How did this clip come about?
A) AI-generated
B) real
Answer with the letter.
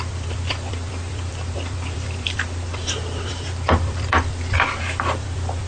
A